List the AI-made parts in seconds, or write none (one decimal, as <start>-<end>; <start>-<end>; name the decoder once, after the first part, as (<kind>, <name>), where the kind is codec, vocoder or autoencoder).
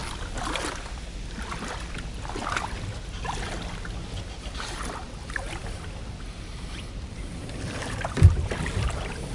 5.6-9.3 (vocoder, BigVGAN v2)